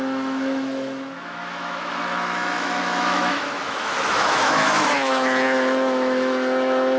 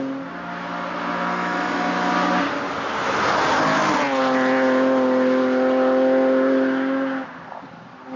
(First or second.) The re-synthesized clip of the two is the first